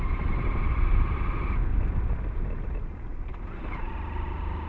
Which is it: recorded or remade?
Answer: recorded